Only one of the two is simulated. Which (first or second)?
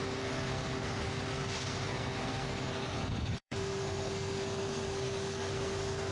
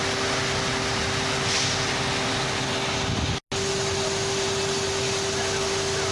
first